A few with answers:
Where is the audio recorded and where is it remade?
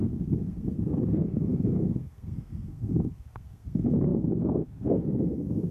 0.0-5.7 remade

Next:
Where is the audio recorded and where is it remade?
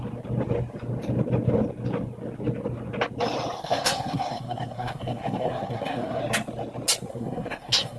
0.0-3.6 recorded; 3.6-6.2 remade; 6.2-7.1 recorded; 7.1-8.0 remade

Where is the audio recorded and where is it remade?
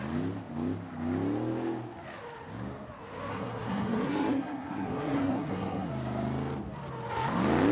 0.0-3.3 recorded; 3.3-5.9 remade; 5.9-7.7 recorded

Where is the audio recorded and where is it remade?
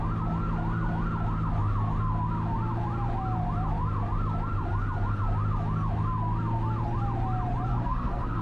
0.0-7.7 recorded; 7.7-8.4 remade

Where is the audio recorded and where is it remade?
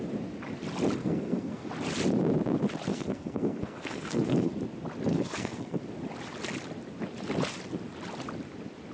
0.0-1.0 recorded; 1.0-1.7 remade; 1.7-2.9 recorded; 2.9-4.5 remade; 4.5-5.1 recorded; 5.1-5.8 remade; 5.8-8.9 recorded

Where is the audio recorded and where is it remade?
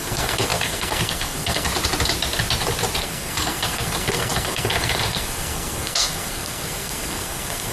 0.0-1.7 remade; 1.7-3.0 recorded; 3.0-7.7 remade